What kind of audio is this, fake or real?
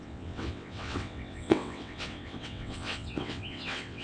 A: fake